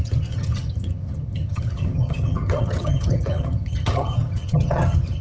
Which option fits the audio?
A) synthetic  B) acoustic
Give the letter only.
A